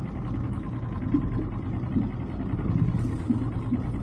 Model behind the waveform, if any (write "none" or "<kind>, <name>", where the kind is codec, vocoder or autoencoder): none